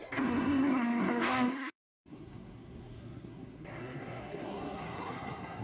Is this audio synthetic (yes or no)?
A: yes